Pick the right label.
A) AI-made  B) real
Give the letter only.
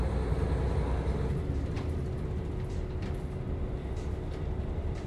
B